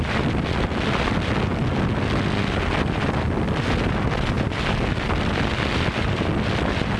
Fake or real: real